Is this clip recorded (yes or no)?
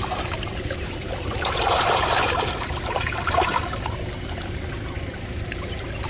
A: no